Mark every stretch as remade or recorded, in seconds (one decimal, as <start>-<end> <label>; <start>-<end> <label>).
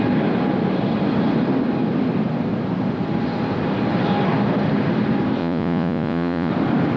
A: 0.0-5.4 recorded; 5.4-6.5 remade; 6.5-7.0 recorded